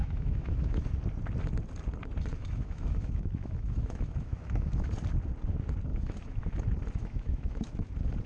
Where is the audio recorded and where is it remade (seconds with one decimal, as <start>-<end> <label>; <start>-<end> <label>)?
0.0-0.9 remade; 0.9-2.3 recorded; 2.3-4.9 remade; 4.9-5.9 recorded; 5.9-6.5 remade; 6.5-7.0 recorded; 7.0-7.9 remade; 7.9-8.3 recorded